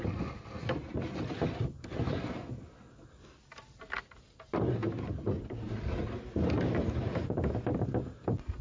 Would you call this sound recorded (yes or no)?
yes